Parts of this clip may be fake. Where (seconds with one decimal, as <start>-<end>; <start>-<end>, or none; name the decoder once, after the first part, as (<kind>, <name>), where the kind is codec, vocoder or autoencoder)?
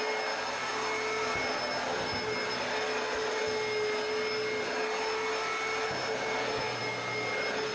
none